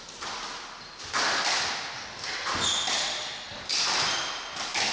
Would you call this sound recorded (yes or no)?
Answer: yes